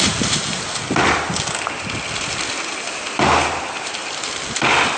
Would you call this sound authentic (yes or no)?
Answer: yes